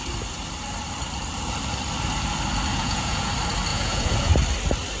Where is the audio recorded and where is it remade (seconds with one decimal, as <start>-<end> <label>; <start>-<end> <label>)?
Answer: 0.0-2.7 recorded; 2.7-3.3 remade; 3.3-3.7 recorded; 3.7-4.3 remade; 4.3-5.0 recorded